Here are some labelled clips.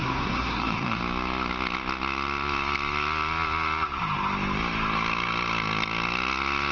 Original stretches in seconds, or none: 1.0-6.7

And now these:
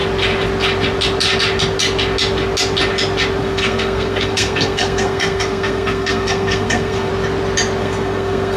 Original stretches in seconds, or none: 0.0-3.4; 7.1-7.8